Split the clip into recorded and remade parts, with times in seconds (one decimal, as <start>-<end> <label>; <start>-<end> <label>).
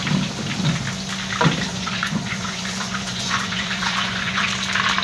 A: 0.0-1.7 recorded; 1.7-4.5 remade; 4.5-5.0 recorded